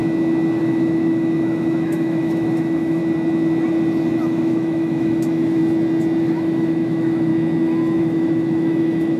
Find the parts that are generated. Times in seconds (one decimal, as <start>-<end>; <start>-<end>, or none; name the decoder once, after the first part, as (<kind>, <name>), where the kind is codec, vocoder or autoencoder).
0.6-3.0 (autoencoder, DAC-VAE); 4.2-5.6; 6.2-7.3; 8.0-9.2